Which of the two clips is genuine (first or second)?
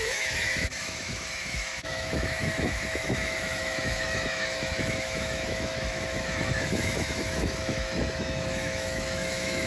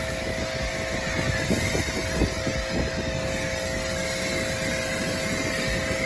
second